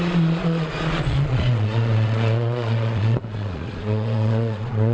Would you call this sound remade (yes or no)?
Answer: yes